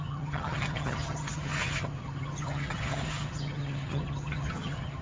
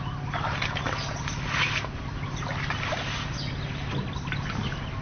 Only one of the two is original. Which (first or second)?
second